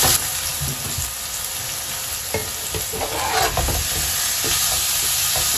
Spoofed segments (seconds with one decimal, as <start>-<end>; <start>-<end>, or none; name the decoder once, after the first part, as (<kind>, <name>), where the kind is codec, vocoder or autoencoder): none